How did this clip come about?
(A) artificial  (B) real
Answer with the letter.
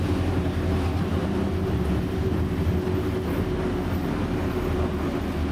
B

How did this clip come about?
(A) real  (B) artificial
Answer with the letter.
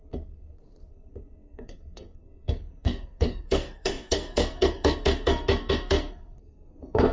B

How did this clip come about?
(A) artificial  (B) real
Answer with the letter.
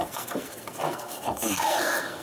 A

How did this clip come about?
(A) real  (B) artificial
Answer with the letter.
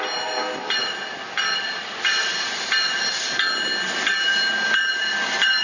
A